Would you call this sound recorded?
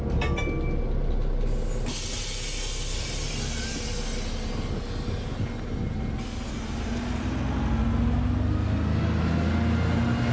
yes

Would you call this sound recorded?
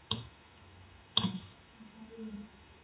no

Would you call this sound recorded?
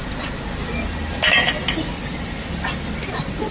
yes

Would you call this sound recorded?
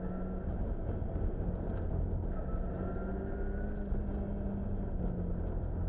yes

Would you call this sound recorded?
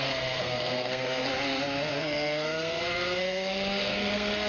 no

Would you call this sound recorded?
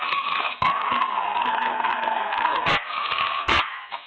no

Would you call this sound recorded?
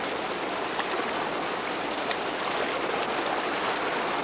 yes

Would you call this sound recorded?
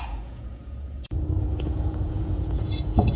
no